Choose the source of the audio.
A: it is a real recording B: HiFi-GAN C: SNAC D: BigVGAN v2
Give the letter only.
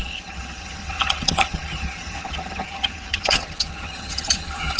B